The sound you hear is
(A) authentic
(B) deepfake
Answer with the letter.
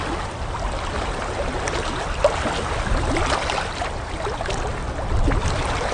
A